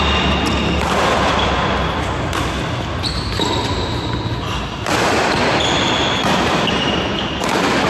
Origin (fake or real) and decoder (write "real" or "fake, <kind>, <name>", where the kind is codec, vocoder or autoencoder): real